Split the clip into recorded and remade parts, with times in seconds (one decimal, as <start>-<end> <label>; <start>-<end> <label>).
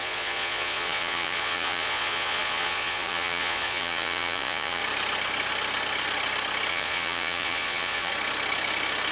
0.0-4.8 remade; 4.8-6.7 recorded; 6.7-8.1 remade; 8.1-9.1 recorded